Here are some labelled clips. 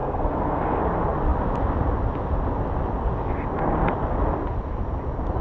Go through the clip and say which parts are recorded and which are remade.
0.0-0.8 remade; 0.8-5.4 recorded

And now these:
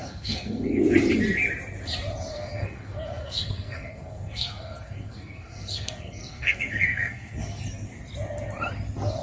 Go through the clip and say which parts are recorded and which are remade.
0.0-0.8 remade; 0.8-2.3 recorded; 2.3-7.6 remade; 7.6-9.2 recorded

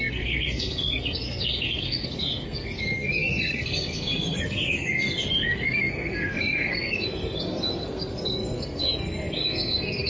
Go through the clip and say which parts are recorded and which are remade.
0.0-10.1 remade

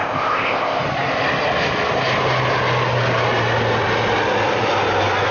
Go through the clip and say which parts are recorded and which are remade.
0.0-0.8 remade; 0.8-5.3 recorded

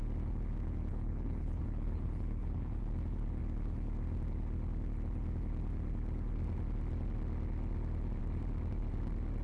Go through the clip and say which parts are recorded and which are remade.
0.0-0.9 recorded; 0.9-2.8 remade; 2.8-9.4 recorded

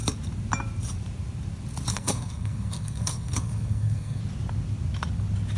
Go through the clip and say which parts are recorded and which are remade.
0.0-1.9 recorded; 1.9-4.2 remade; 4.2-5.6 recorded

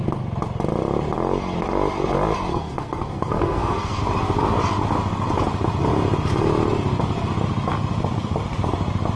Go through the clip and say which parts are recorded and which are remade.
0.0-2.5 recorded; 2.5-4.0 remade; 4.0-9.2 recorded

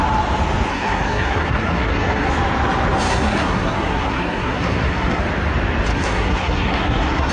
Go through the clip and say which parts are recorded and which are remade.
0.0-0.7 recorded; 0.7-2.3 remade; 2.3-3.1 recorded; 3.1-5.2 remade; 5.2-5.9 recorded; 5.9-7.3 remade